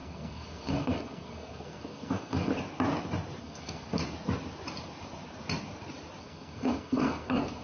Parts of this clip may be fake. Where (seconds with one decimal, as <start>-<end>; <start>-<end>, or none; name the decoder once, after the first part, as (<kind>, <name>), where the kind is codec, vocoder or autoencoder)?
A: 0.0-2.5 (codec, SNAC); 3.4-4.0; 6.2-7.6